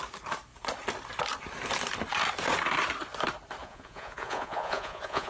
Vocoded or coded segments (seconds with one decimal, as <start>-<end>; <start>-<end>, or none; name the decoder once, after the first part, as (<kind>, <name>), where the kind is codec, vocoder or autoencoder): 3.6-5.3 (vocoder, Vocos)